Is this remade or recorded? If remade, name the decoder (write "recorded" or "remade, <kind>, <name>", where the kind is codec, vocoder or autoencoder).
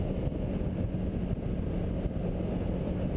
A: recorded